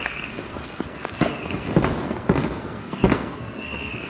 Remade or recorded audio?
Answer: remade